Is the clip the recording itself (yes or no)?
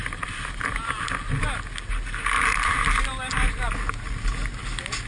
yes